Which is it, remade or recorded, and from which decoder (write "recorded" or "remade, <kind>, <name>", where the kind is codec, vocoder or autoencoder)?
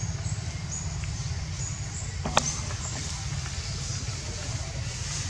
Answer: recorded